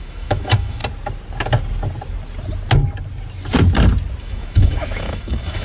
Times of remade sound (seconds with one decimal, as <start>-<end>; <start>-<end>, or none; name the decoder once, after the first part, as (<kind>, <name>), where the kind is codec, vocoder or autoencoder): 0.0-0.8 (autoencoder, DAC-VAE); 4.2-5.6